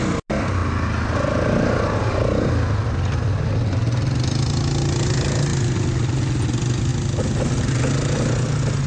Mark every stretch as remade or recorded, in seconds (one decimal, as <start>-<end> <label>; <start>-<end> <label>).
0.0-8.9 recorded